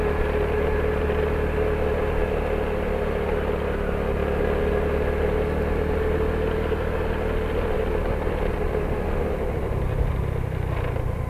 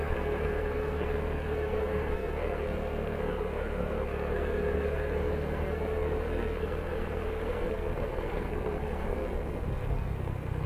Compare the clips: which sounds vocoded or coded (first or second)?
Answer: second